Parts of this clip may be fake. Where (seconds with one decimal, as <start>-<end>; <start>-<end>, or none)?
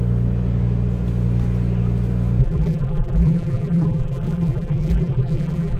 2.4-5.8